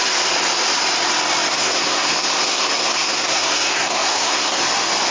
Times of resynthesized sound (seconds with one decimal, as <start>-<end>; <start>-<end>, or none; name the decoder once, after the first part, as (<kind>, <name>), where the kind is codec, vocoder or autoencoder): 1.5-4.6 (codec, SNAC)